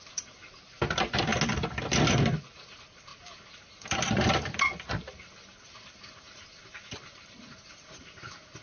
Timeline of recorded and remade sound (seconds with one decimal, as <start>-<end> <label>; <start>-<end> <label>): 0.0-1.3 remade; 1.3-2.2 recorded; 2.2-8.6 remade